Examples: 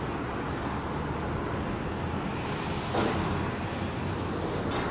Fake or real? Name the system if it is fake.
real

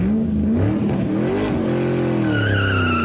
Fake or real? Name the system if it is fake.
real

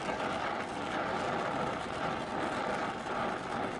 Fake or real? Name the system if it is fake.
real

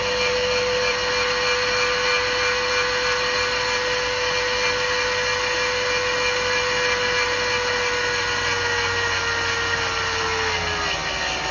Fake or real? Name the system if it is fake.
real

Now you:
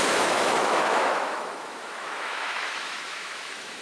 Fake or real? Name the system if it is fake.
fake, autoencoder, DAC-VAE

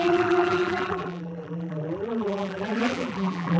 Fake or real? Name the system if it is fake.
fake, vocoder, BigVGAN v2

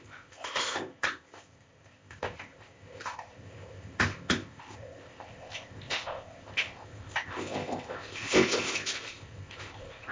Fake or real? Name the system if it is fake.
fake, codec, ZipCodec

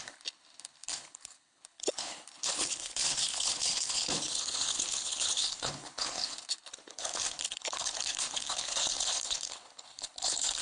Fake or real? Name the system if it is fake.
fake, codec, HILCodec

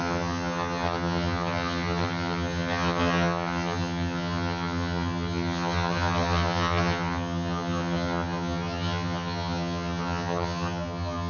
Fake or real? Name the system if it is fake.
fake, vocoder, HiFi-GAN